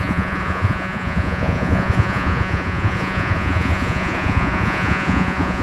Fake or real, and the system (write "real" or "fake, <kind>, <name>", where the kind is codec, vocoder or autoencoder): fake, vocoder, Vocos